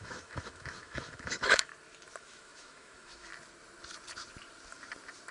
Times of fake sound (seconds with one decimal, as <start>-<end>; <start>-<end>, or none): 0.0-1.7; 2.2-3.3